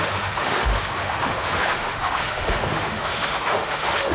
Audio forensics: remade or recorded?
remade